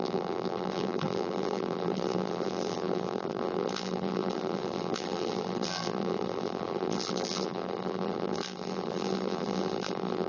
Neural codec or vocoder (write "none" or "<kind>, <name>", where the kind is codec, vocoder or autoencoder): vocoder, BigVGAN v2